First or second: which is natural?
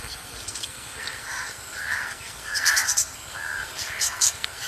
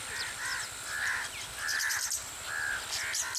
second